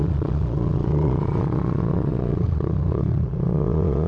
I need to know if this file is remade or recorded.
remade